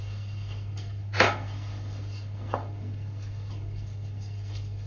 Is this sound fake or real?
fake